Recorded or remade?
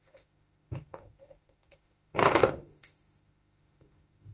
remade